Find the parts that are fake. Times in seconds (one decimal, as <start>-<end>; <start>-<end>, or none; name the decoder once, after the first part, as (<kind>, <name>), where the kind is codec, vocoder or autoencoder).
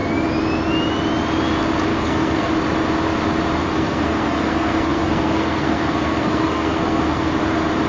1.9-2.5 (codec, SNAC); 3.6-7.3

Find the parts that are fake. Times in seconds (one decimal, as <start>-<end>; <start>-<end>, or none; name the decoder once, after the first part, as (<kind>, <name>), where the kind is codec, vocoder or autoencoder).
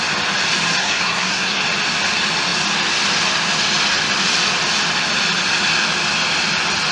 0.8-1.6 (codec, SNAC)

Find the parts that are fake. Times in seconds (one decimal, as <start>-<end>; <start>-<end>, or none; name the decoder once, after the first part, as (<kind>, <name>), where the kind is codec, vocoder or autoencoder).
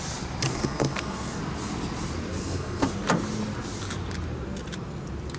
0.5-1.4 (codec, SNAC); 2.4-2.9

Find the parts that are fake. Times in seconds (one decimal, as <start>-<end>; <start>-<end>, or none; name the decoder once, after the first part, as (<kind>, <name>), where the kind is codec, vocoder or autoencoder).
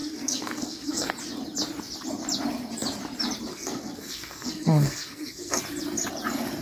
0.0-1.1 (codec, SNAC); 3.5-5.6